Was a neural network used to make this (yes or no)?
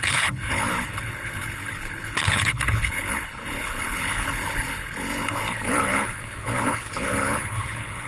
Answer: yes